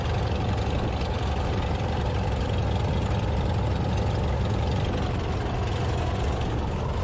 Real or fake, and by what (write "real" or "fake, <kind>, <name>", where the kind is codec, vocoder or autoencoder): real